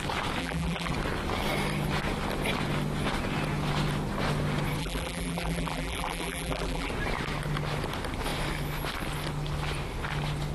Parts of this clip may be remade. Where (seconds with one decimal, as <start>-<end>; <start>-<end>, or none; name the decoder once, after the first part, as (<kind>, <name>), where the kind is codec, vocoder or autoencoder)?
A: 0.4-0.9 (vocoder, BigVGAN v2); 4.8-6.9